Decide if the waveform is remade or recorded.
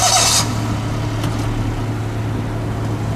recorded